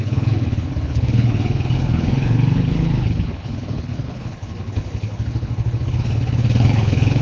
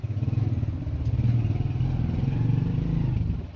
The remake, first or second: first